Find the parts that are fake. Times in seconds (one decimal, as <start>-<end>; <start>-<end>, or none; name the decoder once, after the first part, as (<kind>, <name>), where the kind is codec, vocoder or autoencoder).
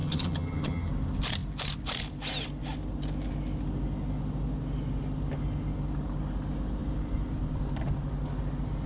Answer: 0.0-0.9 (vocoder, HiFi-GAN)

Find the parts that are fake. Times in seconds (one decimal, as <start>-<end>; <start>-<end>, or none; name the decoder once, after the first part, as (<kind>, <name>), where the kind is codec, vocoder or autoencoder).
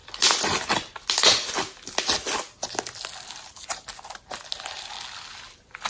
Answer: none